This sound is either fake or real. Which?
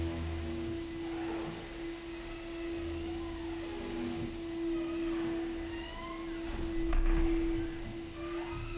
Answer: real